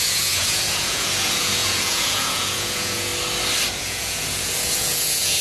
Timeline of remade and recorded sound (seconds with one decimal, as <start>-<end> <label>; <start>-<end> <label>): 0.0-3.1 remade; 3.1-3.8 recorded; 3.8-5.4 remade

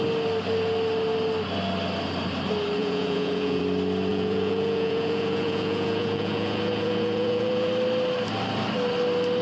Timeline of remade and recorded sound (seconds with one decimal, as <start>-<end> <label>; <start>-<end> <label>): 0.0-2.8 recorded; 2.8-3.6 remade; 3.6-4.1 recorded; 4.1-7.7 remade; 7.7-9.4 recorded

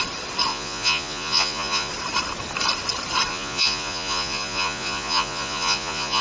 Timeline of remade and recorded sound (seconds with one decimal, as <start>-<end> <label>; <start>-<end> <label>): 0.0-0.5 recorded; 0.5-1.9 remade; 1.9-3.3 recorded; 3.3-6.2 remade